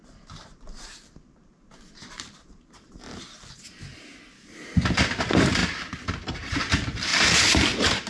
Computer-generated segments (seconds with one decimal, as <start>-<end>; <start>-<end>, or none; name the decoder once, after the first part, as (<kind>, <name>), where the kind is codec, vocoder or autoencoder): 0.0-8.1 (vocoder, BigVGAN v2)